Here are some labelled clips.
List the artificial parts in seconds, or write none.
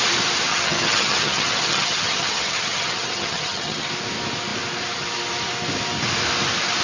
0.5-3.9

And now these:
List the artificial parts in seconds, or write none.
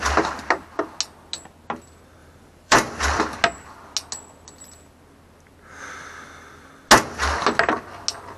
2.2-3.2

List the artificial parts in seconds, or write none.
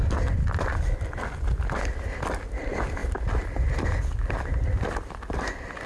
none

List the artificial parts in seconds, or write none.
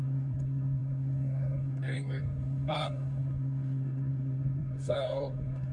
0.0-5.7